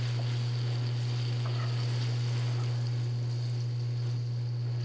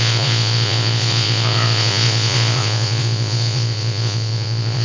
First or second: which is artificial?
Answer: second